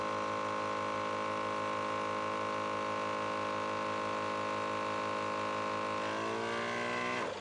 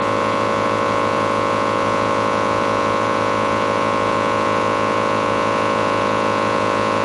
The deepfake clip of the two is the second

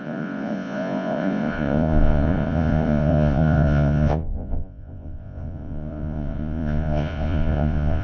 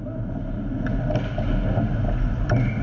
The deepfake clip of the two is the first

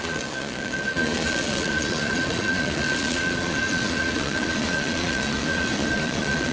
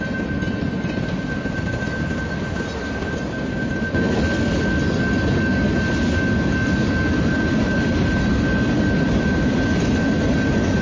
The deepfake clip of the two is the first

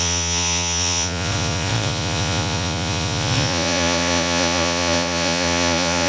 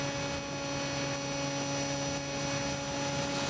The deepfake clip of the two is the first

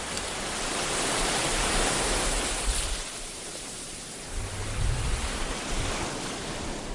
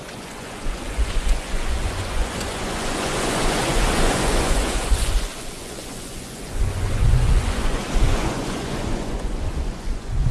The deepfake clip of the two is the second